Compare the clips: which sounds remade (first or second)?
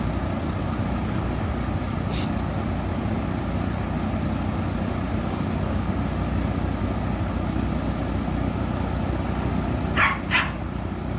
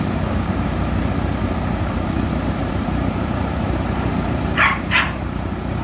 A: second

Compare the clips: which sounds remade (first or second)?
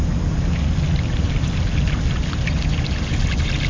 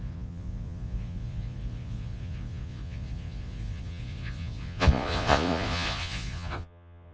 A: second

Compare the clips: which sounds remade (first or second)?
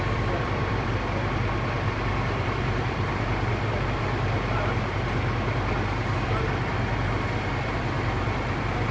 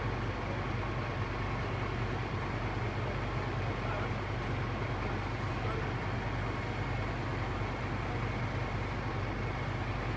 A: first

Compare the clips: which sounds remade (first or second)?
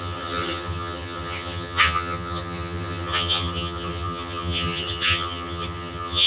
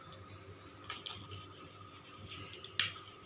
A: first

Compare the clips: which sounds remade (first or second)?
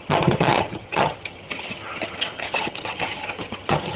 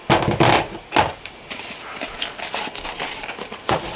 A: first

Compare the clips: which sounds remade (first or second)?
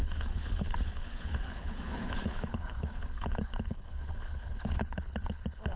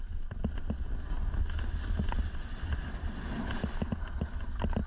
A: first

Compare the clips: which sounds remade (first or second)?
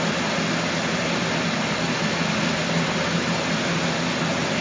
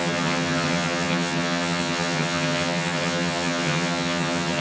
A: second